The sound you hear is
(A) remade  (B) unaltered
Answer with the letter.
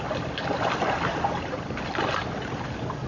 B